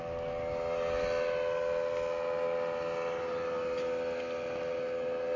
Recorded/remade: recorded